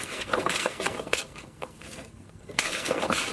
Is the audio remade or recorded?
remade